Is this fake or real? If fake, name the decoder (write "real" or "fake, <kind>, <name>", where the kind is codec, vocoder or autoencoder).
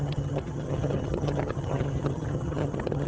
fake, vocoder, HiFi-GAN